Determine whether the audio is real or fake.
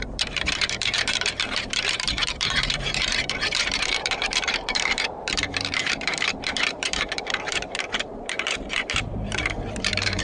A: fake